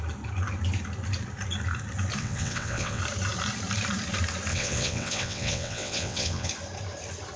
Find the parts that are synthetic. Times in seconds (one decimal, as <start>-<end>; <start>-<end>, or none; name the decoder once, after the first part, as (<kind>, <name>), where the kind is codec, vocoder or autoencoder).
2.2-3.0 (vocoder, WaveNeXt); 4.5-6.5